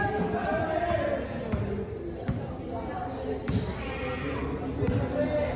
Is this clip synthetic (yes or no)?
no